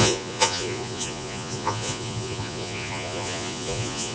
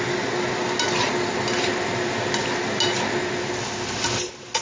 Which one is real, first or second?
second